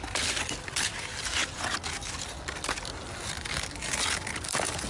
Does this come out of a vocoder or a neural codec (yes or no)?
no